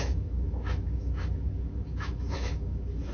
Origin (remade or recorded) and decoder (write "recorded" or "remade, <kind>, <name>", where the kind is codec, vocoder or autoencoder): remade, autoencoder, DAC-VAE